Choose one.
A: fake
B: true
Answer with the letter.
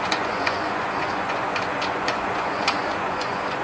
A